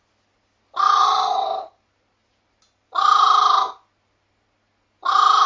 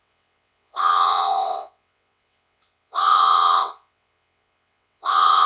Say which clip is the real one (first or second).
first